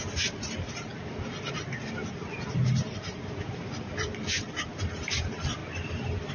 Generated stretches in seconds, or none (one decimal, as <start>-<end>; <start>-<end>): 0.0-0.9; 1.5-5.6